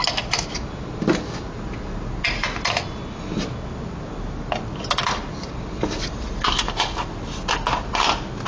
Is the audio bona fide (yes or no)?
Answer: yes